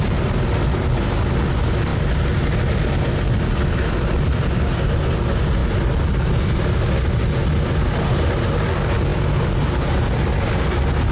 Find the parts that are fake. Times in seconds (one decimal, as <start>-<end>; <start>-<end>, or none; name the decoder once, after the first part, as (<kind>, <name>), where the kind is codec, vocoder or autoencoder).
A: none